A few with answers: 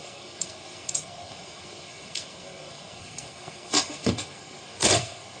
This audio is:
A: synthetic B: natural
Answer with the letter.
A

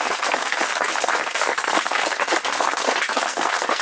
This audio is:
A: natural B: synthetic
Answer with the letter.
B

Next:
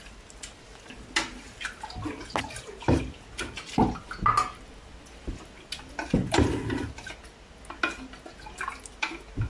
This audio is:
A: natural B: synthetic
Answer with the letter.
A